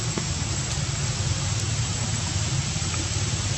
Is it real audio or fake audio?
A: real